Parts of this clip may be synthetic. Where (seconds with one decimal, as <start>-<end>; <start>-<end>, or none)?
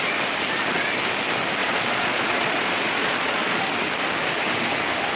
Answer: 1.6-3.6